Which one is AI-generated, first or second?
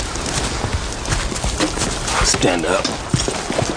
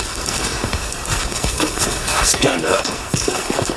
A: second